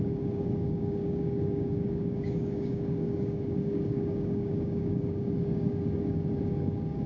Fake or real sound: fake